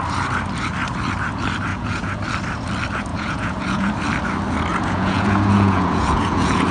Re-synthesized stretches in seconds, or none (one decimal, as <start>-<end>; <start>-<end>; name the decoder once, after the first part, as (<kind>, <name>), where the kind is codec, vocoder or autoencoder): 1.7-2.2 (vocoder, Vocos); 3.1-3.9; 4.7-6.7